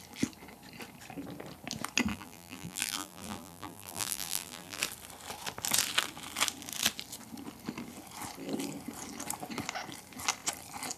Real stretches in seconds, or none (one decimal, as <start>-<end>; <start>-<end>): 0.0-2.1; 4.8-11.0

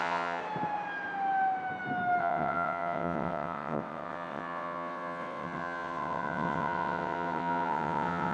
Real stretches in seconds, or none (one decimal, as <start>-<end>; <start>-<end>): 0.4-2.2

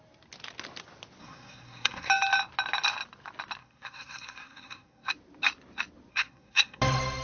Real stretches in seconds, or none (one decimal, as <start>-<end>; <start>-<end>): 0.0-1.2; 2.1-3.6; 5.1-6.1; 6.8-7.2

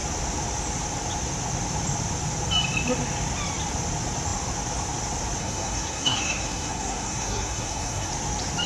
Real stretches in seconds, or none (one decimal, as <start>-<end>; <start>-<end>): 0.0-5.4; 8.1-8.7

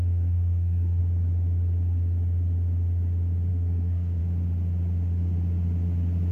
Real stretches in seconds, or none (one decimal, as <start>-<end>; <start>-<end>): 1.0-3.5; 4.2-6.3

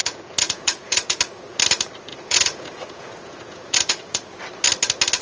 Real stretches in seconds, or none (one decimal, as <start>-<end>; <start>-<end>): 1.2-2.1; 4.4-5.2